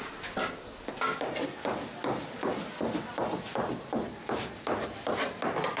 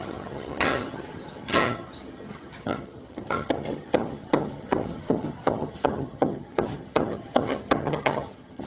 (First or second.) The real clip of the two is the first